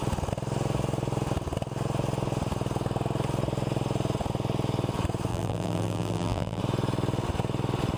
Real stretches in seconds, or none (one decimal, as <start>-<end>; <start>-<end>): 0.0-5.3; 6.6-8.0